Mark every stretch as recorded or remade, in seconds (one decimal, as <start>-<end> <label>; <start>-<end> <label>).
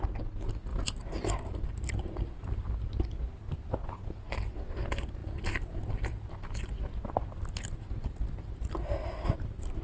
0.0-0.7 recorded; 0.7-2.6 remade; 2.6-5.2 recorded; 5.2-6.7 remade; 6.7-9.8 recorded